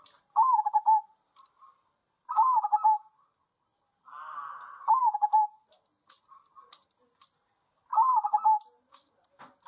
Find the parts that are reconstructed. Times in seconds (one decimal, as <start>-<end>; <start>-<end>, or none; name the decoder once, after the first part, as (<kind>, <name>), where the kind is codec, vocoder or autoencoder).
none